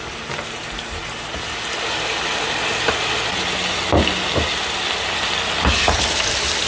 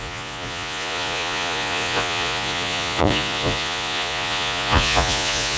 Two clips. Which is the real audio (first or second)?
first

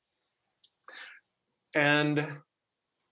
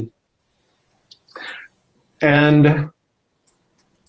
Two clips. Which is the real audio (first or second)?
first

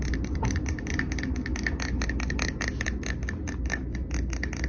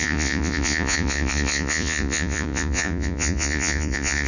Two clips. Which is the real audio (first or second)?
first